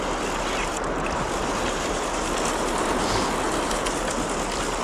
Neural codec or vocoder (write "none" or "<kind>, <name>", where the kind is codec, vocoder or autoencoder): none